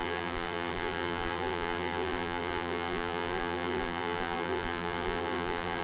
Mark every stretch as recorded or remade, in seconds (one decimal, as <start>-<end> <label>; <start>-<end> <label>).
0.0-5.8 remade

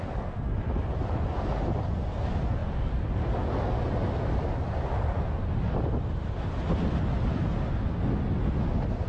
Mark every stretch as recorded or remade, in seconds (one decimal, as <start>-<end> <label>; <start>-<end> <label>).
0.0-6.6 recorded; 6.6-7.4 remade; 7.4-9.1 recorded

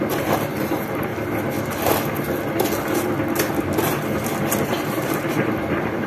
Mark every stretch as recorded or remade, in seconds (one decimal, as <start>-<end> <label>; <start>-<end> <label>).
0.0-1.1 remade; 1.1-3.6 recorded; 3.6-6.1 remade

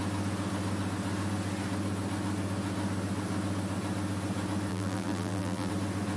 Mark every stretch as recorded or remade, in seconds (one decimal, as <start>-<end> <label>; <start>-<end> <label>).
0.0-4.7 recorded; 4.7-5.7 remade; 5.7-6.2 recorded

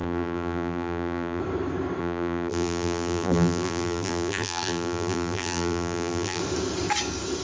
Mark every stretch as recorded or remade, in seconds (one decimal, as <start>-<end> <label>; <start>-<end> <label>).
0.0-1.4 remade; 1.4-2.0 recorded; 2.0-6.4 remade; 6.4-7.4 recorded

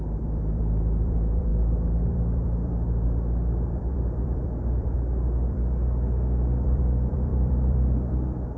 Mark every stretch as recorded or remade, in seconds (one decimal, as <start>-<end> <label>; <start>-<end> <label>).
0.0-8.6 remade